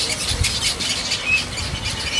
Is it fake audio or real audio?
real